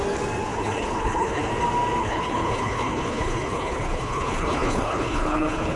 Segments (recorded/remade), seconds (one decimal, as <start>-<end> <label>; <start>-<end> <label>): 0.0-0.5 recorded; 0.5-1.5 remade; 1.5-2.0 recorded; 2.0-5.8 remade